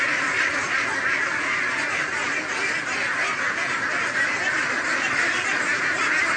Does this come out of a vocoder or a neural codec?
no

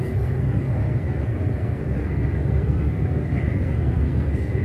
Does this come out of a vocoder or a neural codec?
yes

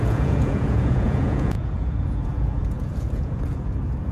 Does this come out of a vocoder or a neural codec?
yes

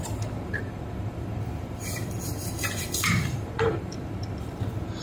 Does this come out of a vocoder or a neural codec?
yes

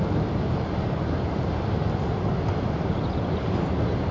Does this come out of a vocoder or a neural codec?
no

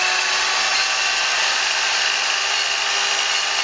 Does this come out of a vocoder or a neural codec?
no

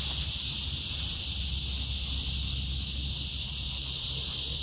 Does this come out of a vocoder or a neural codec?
yes